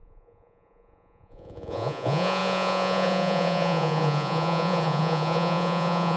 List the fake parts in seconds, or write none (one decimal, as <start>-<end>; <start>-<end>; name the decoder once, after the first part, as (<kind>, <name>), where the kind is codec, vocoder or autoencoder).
0.0-6.2 (vocoder, Vocos)